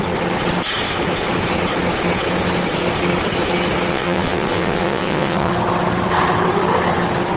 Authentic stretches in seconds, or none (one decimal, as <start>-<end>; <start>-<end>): 0.0-3.9; 5.5-7.4